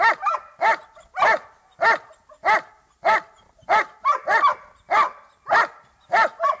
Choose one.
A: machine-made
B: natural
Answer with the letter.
B